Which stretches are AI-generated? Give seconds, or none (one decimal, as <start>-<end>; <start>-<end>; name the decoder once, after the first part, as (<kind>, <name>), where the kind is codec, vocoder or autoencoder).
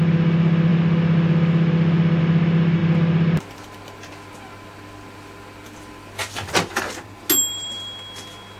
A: none